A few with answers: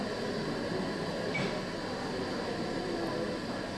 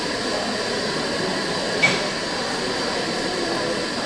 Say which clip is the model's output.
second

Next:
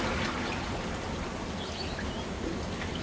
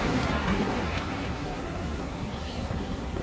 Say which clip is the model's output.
second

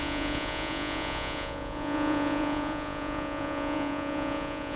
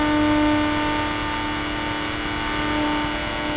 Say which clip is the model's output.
first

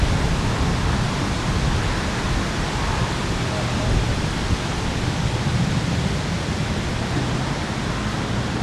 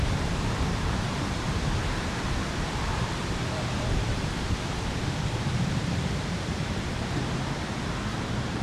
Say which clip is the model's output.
second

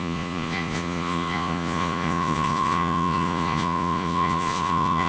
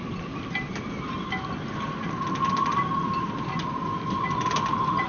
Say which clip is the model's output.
first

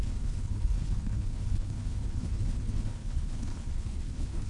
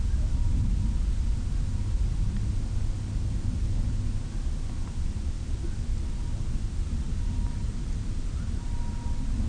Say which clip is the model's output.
first